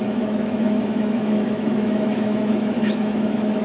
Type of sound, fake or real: fake